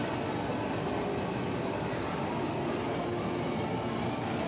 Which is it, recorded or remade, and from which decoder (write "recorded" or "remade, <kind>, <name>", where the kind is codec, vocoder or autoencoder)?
recorded